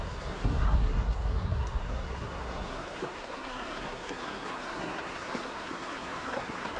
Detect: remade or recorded remade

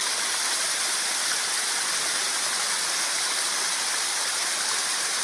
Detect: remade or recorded recorded